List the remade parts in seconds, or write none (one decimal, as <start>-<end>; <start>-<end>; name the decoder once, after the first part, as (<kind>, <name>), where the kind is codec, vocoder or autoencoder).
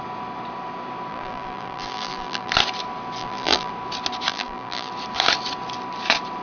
1.1-2.5 (vocoder, BigVGAN v2); 3.2-3.7; 4.3-4.9